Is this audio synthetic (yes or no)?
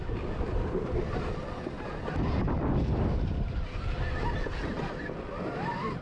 no